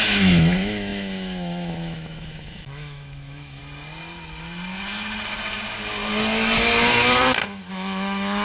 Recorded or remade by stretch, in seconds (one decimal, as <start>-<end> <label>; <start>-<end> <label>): 0.0-3.6 remade; 3.6-7.7 recorded; 7.7-8.4 remade